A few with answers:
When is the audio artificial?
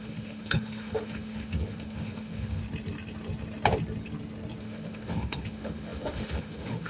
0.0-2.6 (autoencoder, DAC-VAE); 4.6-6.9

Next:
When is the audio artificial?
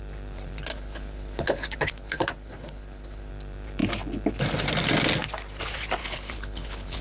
0.7-3.3 (codec, HILCodec); 6.0-7.0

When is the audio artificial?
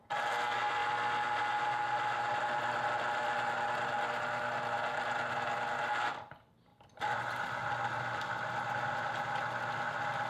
6.7-8.9 (vocoder, BigVGAN v2)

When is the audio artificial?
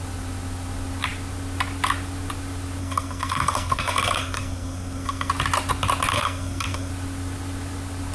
2.8-5.3 (codec, SNAC); 6.1-6.9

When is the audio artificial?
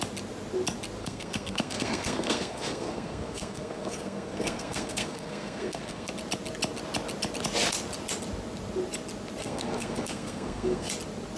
1.0-6.1 (codec, SNAC); 9.4-10.9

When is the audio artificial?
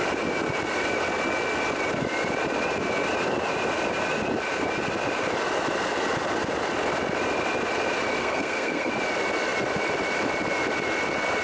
8.2-8.9 (codec, SNAC)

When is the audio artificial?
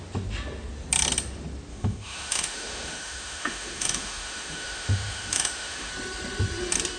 1.7-5.9 (autoencoder, DAC-VAE)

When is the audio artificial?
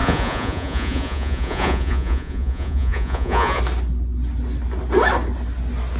0.0-3.6 (vocoder, Vocos)